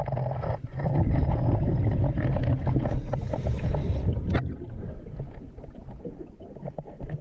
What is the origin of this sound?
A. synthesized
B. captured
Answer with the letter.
B